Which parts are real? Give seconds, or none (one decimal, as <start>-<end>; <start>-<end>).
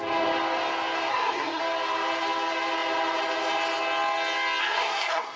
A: 0.0-1.1; 1.6-4.6